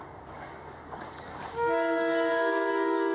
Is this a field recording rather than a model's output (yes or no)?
no